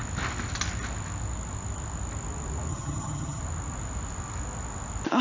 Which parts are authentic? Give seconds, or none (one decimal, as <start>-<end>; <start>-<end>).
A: 0.0-2.7; 3.4-5.2